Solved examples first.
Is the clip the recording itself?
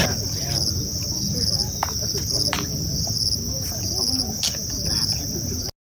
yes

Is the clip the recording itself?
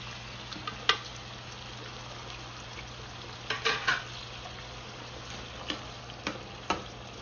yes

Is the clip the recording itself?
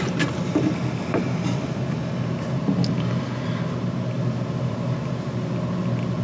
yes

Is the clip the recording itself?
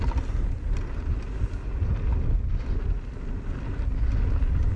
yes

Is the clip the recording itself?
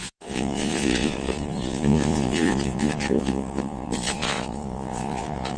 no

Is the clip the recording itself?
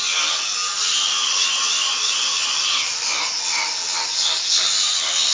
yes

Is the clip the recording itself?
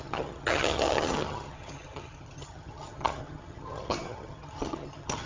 no